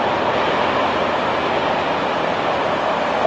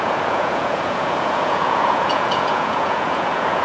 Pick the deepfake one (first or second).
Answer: second